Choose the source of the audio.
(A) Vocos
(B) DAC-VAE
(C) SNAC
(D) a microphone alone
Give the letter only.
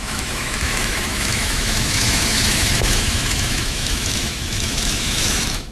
B